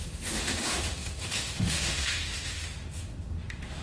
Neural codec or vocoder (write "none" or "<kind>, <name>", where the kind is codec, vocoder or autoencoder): autoencoder, DAC-VAE